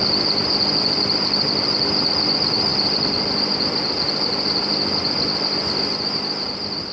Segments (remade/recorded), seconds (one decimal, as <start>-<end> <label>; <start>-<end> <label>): 0.0-6.9 recorded